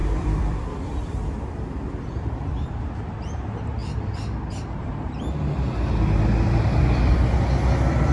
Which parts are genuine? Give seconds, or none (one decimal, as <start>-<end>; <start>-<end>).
2.7-3.8; 4.8-8.1